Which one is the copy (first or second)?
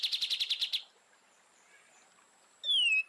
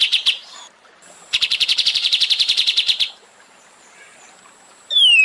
second